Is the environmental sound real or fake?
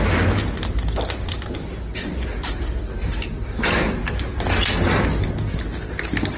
real